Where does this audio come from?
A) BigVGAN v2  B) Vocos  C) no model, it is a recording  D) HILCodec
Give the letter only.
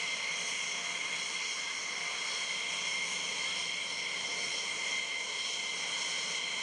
C